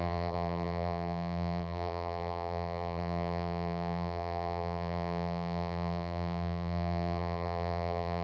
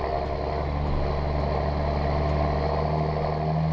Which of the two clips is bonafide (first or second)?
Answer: second